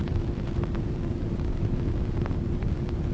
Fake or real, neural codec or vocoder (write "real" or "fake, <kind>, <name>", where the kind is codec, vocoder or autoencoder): real